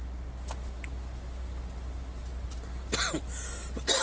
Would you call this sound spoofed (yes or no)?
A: no